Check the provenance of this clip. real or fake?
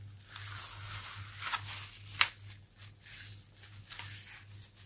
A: real